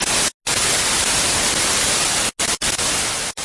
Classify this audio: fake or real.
real